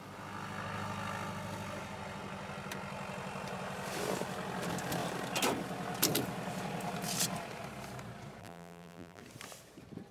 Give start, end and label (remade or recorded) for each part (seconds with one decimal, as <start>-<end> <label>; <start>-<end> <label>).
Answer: 0.0-8.4 recorded; 8.4-9.2 remade; 9.2-10.1 recorded